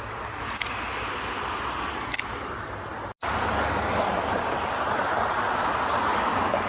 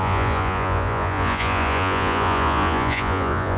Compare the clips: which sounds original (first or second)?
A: first